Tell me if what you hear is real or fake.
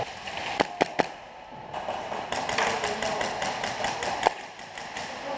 fake